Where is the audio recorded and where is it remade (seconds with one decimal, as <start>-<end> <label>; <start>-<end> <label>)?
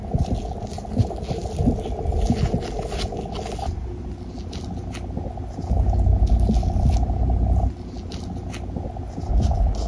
0.0-9.9 recorded